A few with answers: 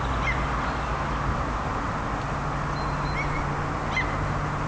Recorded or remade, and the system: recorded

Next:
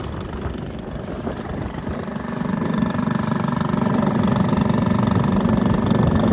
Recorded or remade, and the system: recorded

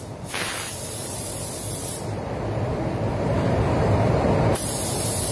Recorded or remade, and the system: remade, vocoder, BigVGAN v2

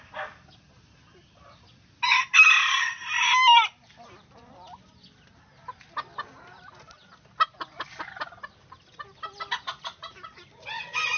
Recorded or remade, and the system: recorded